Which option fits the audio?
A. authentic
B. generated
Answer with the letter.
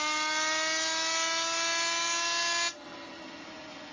A